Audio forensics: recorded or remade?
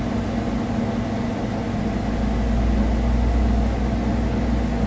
recorded